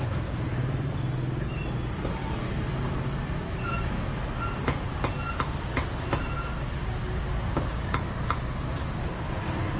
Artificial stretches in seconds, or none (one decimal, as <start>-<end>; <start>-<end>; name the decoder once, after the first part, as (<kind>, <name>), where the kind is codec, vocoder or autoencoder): none